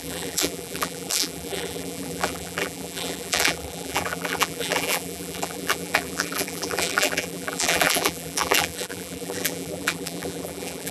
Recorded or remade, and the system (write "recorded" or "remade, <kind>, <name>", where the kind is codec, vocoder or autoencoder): remade, vocoder, BigVGAN v2